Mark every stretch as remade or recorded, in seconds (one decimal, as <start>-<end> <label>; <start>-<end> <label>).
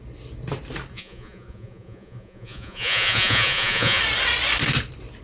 0.0-0.9 recorded; 0.9-4.0 remade; 4.0-5.2 recorded